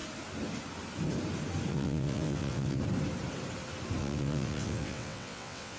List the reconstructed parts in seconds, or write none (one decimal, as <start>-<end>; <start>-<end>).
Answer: 1.7-2.8; 4.0-5.8